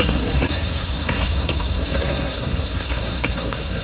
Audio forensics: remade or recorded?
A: remade